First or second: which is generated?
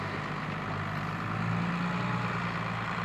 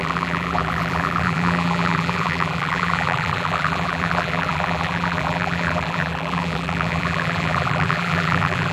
second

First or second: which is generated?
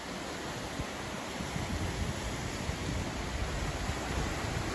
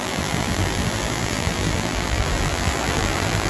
second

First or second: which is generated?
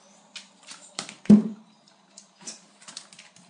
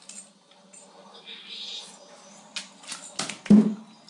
first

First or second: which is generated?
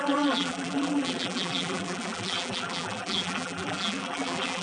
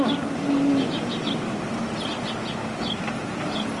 first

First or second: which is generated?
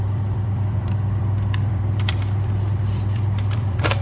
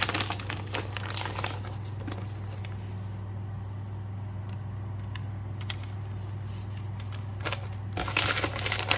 first